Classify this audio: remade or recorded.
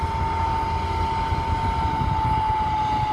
recorded